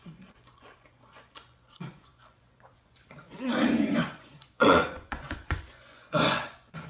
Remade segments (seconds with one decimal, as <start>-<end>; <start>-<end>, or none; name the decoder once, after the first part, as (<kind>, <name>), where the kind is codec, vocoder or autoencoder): 0.0-6.9 (vocoder, Vocos)